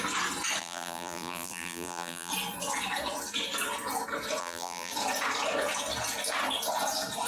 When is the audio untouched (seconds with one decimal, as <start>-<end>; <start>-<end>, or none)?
0.0-0.6; 2.3-4.4; 4.9-7.3